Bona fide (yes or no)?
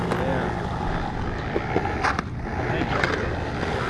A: yes